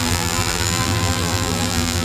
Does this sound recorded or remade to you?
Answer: remade